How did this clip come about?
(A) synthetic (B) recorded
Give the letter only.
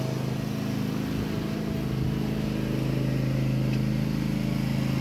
B